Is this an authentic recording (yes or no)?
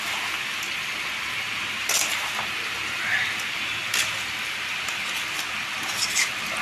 yes